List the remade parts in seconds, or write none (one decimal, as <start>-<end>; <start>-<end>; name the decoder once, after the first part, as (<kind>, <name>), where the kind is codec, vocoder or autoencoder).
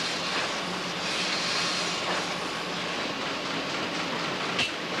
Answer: none